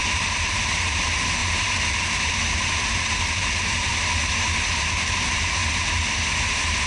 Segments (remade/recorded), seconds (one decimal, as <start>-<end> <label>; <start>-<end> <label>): 0.0-3.9 remade; 3.9-4.8 recorded; 4.8-5.6 remade; 5.6-6.4 recorded; 6.4-6.9 remade